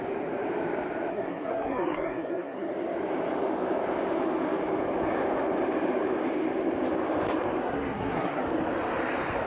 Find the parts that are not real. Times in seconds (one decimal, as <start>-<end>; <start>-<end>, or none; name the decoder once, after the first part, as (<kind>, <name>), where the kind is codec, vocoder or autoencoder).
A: 1.1-2.7 (codec, SNAC); 7.6-8.4